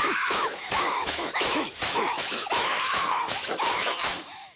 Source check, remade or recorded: remade